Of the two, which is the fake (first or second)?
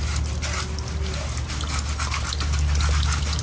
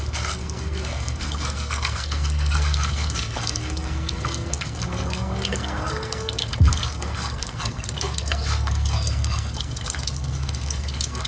second